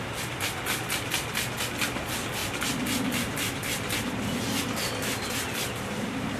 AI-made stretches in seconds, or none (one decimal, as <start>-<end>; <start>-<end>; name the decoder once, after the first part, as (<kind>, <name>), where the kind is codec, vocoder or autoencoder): none